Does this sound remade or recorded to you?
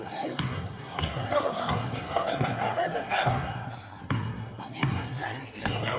remade